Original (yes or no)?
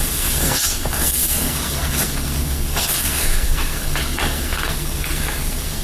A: no